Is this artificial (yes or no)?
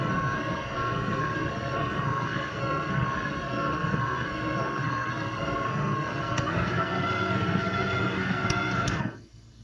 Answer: yes